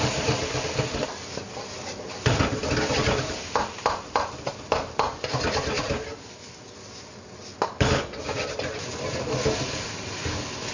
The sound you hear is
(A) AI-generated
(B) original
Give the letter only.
B